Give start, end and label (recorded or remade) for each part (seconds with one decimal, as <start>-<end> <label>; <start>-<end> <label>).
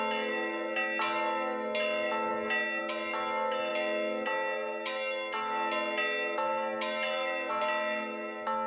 0.0-8.7 recorded